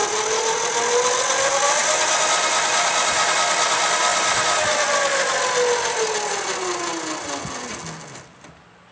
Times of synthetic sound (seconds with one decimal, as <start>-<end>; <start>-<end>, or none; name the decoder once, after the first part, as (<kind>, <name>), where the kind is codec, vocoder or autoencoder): none